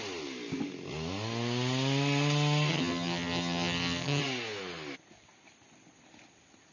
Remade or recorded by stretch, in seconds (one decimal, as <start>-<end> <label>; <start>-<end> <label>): 0.0-2.7 recorded; 2.7-4.2 remade; 4.2-6.7 recorded